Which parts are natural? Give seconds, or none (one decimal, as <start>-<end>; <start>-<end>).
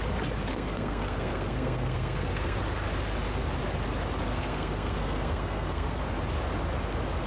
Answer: 0.0-0.5; 2.6-4.3; 6.0-7.3